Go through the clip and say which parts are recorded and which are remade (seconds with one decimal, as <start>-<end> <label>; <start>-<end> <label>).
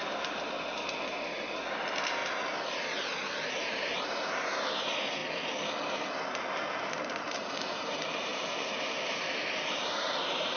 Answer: 0.0-2.2 remade; 2.2-3.5 recorded; 3.5-5.2 remade; 5.2-6.9 recorded; 6.9-8.3 remade; 8.3-9.5 recorded; 9.5-10.6 remade